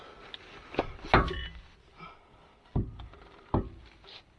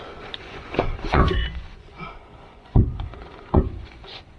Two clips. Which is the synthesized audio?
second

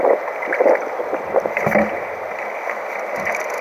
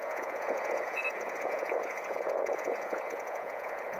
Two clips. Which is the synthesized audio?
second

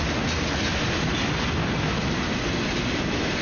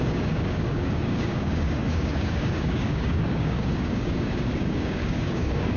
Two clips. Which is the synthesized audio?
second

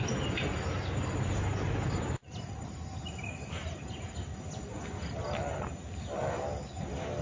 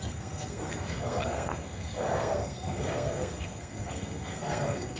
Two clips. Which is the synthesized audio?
second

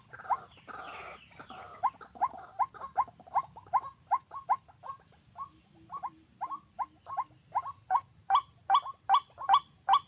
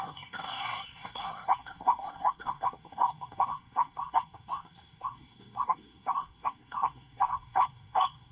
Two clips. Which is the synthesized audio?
second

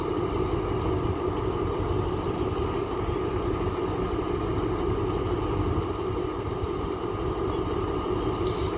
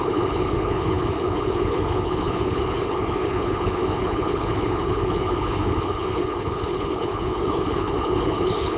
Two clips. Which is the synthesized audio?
second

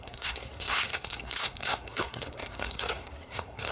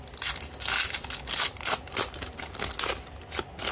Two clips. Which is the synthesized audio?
first